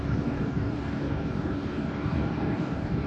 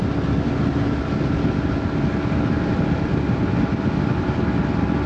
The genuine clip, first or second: second